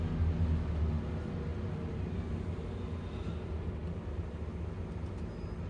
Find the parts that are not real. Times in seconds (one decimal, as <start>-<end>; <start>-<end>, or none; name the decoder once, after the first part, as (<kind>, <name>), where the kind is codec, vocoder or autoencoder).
none